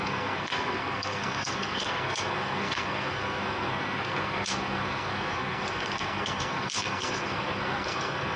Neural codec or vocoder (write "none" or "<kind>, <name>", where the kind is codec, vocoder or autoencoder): codec, SNAC